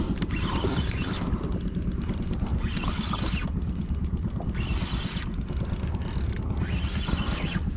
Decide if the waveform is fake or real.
real